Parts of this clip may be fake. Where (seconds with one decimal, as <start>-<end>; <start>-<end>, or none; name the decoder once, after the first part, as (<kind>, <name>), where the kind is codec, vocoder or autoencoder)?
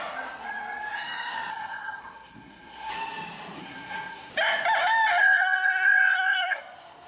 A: 1.5-2.9 (codec, SNAC); 3.6-4.3; 5.2-6.6